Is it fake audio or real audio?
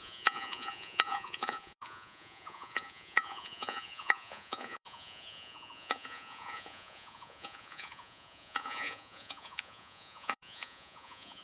fake